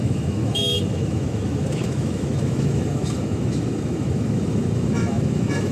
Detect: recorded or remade remade